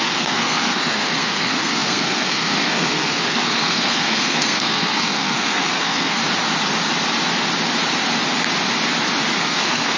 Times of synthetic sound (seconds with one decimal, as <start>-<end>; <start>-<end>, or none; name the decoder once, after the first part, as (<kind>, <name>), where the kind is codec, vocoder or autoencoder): 0.0-6.2 (codec, SNAC); 9.4-10.0